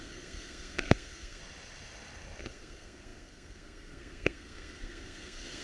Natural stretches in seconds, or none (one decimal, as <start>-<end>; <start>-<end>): 1.4-2.4